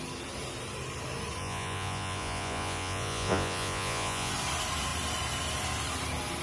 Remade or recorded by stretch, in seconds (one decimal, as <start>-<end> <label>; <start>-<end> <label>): 0.0-1.4 recorded; 1.4-4.3 remade; 4.3-6.4 recorded